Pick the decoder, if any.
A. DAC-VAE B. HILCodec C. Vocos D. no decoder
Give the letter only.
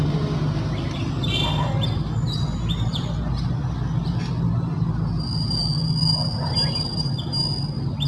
D